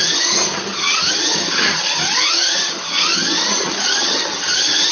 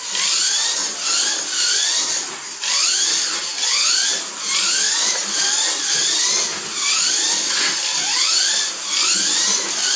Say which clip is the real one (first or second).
second